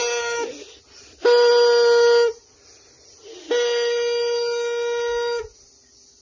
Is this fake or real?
real